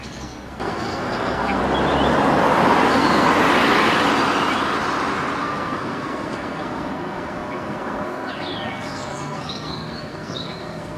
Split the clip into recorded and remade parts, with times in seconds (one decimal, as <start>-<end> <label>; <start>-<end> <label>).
0.0-1.6 remade; 1.6-2.9 recorded; 2.9-3.3 remade; 3.3-5.4 recorded; 5.4-11.0 remade